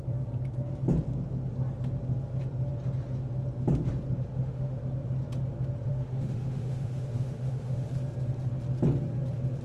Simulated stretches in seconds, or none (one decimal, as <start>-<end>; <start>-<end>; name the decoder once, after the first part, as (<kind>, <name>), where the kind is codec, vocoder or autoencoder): 4.3-4.8 (autoencoder, DAC-VAE); 5.9-7.9

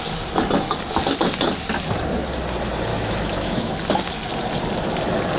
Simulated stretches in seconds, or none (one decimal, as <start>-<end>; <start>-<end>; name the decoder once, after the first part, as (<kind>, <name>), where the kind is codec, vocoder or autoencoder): 2.9-3.7 (autoencoder, DAC-VAE)